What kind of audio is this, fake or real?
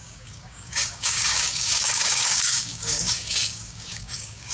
fake